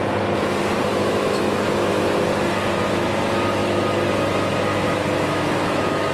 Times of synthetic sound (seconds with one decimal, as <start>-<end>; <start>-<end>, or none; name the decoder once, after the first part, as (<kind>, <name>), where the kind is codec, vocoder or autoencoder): 0.9-2.1 (autoencoder, DAC-VAE); 3.6-4.1; 4.7-6.1